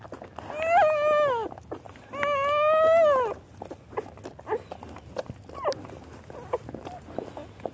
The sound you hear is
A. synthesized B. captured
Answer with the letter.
B